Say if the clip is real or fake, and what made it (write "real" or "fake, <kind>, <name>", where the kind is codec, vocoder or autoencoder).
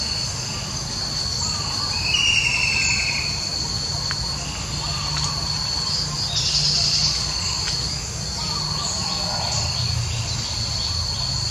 real